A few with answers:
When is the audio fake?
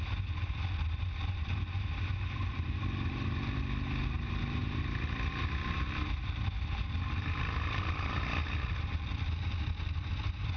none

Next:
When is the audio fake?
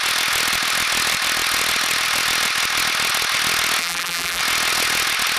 3.8-4.4 (vocoder, BigVGAN v2)